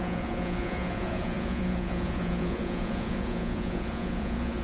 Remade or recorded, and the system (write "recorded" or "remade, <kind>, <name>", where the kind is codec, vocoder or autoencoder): remade, vocoder, Vocos